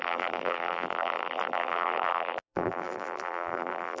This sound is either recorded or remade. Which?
remade